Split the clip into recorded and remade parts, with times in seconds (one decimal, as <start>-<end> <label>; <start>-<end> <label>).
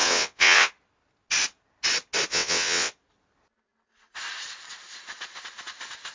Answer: 0.0-0.7 remade; 0.7-2.3 recorded; 2.3-2.9 remade; 2.9-6.1 recorded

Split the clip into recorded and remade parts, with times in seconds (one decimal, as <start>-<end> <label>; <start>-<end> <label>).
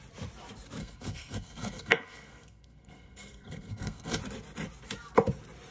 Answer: 0.0-0.8 recorded; 0.8-4.2 remade; 4.2-5.7 recorded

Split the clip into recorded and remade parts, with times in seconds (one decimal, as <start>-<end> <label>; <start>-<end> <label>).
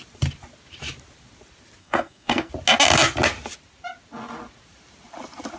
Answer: 0.0-1.8 recorded; 1.8-2.5 remade; 2.5-5.6 recorded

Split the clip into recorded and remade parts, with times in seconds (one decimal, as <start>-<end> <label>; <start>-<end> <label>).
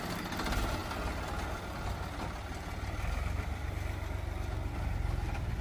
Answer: 0.0-5.6 recorded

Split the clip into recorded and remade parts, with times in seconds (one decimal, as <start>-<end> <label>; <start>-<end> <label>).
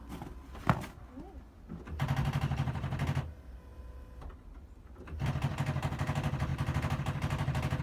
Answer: 0.0-7.8 recorded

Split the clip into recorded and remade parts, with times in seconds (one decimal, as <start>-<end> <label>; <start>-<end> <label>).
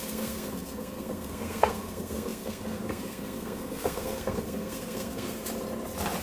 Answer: 0.0-5.4 remade; 5.4-6.2 recorded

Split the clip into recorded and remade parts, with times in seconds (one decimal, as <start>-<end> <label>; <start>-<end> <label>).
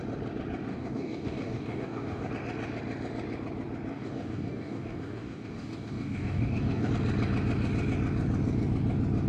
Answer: 0.0-0.7 recorded; 0.7-2.3 remade; 2.3-3.9 recorded; 3.9-6.9 remade; 6.9-9.3 recorded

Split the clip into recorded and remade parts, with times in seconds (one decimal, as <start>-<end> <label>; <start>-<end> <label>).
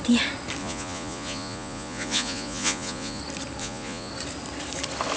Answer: 0.0-0.6 recorded; 0.6-3.2 remade; 3.2-3.6 recorded; 3.6-4.1 remade; 4.1-5.2 recorded